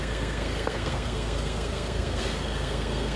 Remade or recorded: remade